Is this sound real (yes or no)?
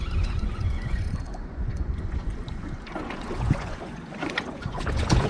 no